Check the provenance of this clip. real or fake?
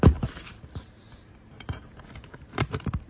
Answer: fake